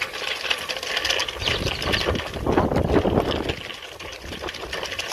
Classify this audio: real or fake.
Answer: real